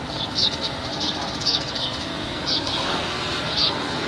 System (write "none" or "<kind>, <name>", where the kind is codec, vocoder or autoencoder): codec, SNAC